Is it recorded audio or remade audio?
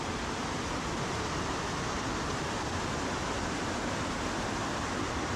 recorded